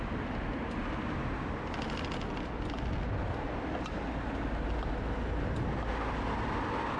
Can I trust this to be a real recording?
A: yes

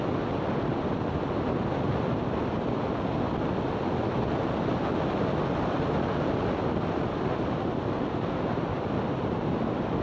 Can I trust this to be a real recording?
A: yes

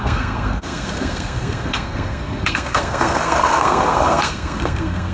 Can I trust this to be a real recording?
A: no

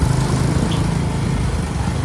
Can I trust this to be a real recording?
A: yes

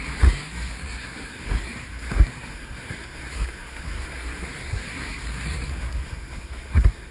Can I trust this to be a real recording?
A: no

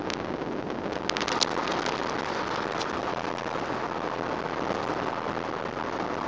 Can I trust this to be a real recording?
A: yes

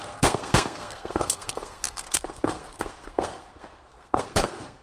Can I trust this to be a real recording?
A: no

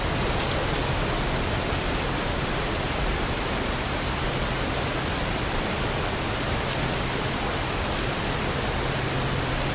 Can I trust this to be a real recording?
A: yes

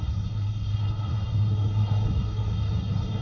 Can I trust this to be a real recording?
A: no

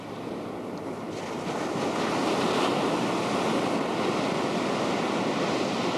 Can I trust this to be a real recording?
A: yes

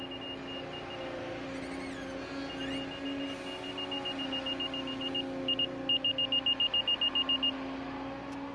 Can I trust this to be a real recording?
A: yes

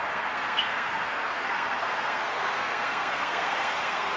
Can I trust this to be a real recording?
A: no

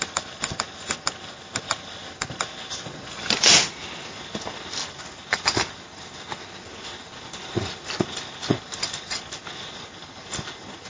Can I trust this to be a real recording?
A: yes